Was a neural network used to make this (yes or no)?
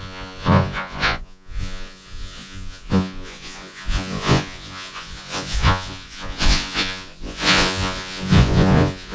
yes